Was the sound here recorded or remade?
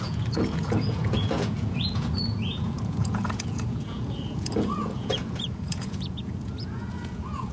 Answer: remade